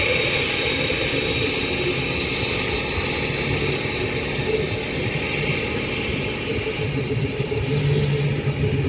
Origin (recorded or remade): recorded